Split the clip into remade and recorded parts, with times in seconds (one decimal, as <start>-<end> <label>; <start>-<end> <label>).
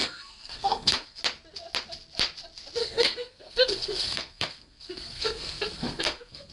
0.0-1.2 remade; 1.2-2.8 recorded; 2.8-6.5 remade